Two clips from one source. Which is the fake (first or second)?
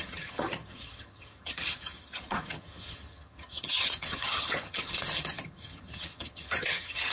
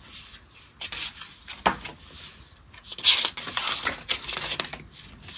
first